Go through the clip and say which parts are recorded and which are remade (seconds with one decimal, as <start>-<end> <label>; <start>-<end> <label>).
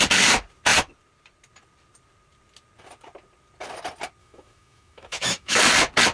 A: 0.0-4.2 recorded; 4.2-5.6 remade; 5.6-6.1 recorded